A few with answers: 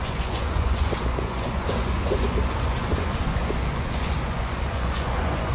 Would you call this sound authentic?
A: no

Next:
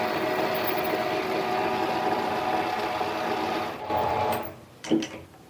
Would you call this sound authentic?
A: yes